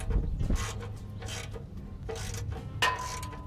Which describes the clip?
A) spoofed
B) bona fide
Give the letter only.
B